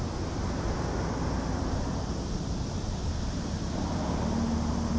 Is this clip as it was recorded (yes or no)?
yes